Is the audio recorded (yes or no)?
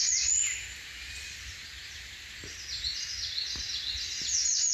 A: yes